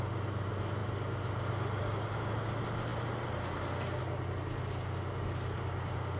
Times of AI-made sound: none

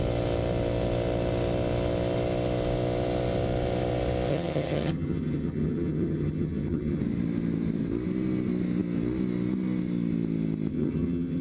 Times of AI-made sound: 4.3-7.0 (vocoder, HiFi-GAN); 10.7-11.4

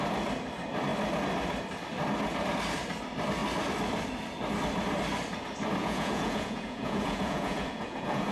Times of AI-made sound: 5.8-8.3 (vocoder, Vocos)

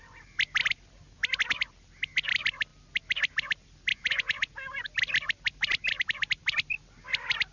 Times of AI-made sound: 3.9-4.5 (vocoder, Vocos)

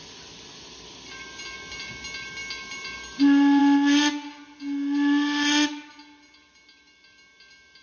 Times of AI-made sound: none

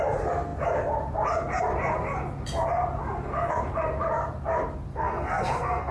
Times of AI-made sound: 4.9-5.9 (codec, SNAC)

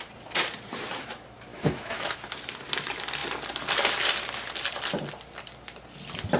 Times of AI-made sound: 1.5-2.1 (autoencoder, DAC-VAE)

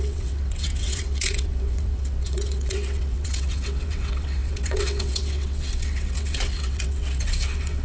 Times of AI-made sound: 0.0-7.8 (vocoder, WaveNeXt)